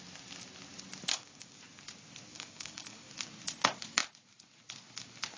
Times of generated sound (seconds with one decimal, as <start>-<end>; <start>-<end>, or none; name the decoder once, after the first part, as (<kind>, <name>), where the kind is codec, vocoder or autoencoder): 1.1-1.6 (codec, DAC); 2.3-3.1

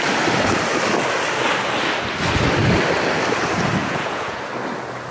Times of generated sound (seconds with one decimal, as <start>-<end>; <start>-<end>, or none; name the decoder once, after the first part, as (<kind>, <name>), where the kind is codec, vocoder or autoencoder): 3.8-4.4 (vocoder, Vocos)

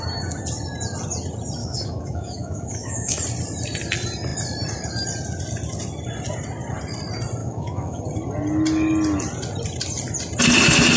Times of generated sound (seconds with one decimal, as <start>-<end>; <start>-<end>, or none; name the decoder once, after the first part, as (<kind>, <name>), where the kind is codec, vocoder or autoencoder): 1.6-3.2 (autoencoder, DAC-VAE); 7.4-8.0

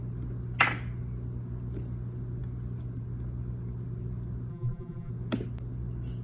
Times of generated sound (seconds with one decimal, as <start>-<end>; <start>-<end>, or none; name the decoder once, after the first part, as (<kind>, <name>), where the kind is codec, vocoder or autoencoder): 4.5-5.1 (vocoder, BigVGAN v2)

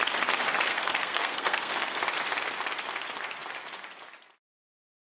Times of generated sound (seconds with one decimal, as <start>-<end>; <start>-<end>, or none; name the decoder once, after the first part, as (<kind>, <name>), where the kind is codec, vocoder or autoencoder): 0.7-2.0 (codec, SNAC)

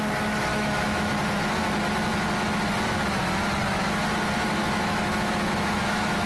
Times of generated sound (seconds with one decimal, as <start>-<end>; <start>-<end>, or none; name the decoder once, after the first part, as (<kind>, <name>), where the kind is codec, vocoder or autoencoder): 0.5-1.1 (autoencoder, DAC-VAE); 4.6-6.3